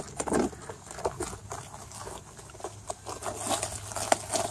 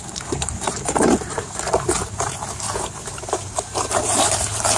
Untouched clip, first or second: first